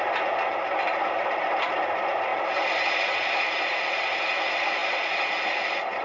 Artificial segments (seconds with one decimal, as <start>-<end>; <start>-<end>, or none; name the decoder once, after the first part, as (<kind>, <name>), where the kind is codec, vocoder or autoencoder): 0.0-4.8 (vocoder, BigVGAN v2)